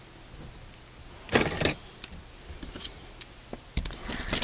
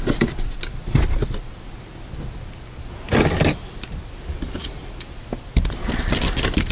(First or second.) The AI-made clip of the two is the second